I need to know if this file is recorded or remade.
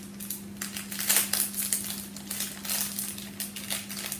recorded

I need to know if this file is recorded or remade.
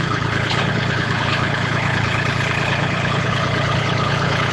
remade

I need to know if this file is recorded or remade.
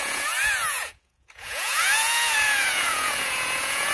remade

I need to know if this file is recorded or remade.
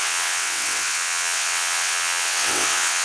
remade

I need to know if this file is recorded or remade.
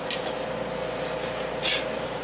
recorded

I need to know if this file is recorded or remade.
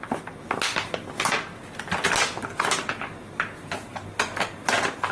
recorded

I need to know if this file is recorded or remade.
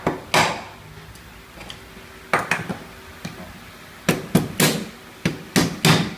recorded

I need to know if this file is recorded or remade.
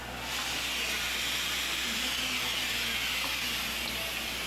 recorded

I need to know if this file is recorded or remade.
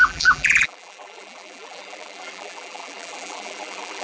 remade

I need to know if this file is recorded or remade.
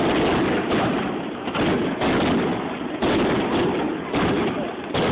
recorded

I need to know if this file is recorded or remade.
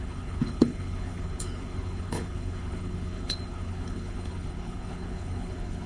remade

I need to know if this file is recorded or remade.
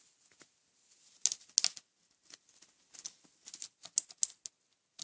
recorded